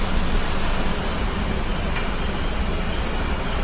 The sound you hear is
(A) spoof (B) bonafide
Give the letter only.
A